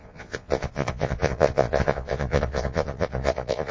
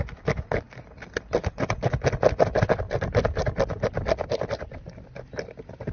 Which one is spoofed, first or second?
first